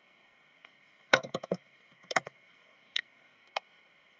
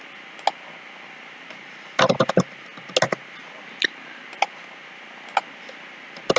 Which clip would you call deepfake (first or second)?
first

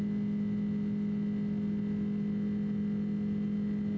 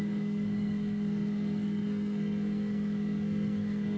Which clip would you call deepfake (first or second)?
second